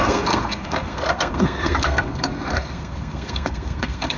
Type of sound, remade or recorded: remade